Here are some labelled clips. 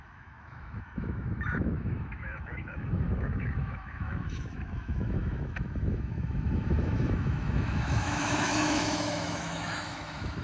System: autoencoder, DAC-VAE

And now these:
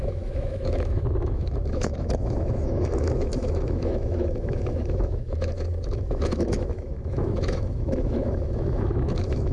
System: autoencoder, DAC-VAE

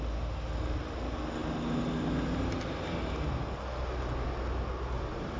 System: none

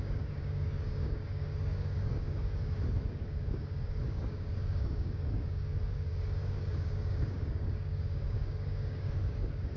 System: codec, DAC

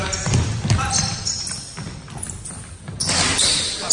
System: none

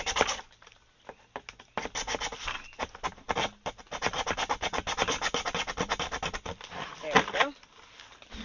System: none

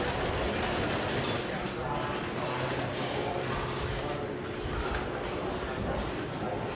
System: none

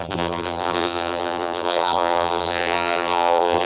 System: vocoder, BigVGAN v2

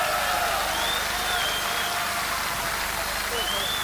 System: none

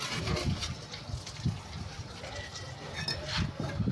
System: none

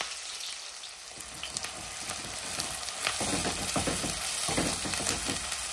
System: none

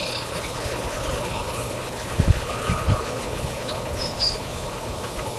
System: codec, HILCodec